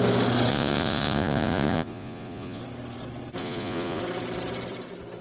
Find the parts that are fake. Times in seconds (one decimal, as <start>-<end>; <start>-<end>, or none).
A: 0.5-2.6; 3.4-4.0